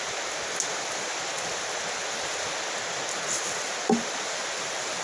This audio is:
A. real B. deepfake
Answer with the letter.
A